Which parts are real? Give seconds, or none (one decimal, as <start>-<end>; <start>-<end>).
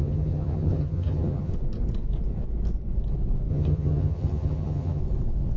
1.5-3.5; 5.0-5.6